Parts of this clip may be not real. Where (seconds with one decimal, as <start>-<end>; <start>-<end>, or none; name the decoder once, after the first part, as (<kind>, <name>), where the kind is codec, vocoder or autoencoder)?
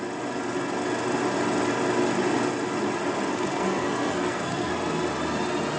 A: 3.3-4.7 (codec, SNAC)